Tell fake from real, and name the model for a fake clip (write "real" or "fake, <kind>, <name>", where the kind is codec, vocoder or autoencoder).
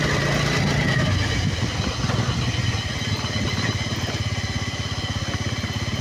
real